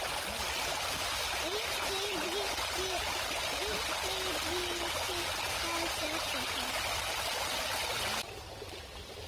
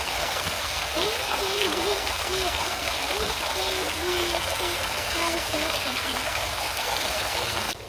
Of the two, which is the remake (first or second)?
second